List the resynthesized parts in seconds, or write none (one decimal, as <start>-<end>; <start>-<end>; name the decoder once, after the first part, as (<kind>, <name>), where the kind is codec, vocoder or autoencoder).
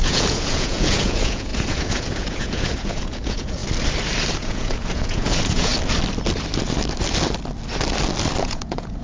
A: 0.0-3.6 (vocoder, Vocos); 4.3-5.7; 8.4-9.0